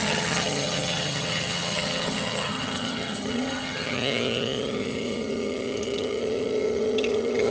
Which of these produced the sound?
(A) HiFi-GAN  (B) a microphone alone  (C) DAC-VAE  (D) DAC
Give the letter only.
A